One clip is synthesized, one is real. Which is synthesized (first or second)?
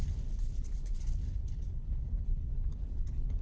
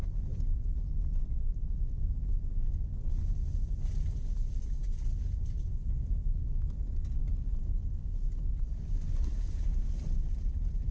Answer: first